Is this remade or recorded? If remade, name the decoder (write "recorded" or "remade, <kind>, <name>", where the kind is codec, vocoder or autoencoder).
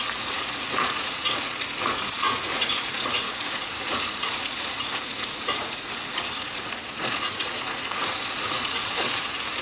remade, vocoder, Vocos